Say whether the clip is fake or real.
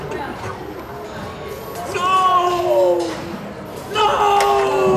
real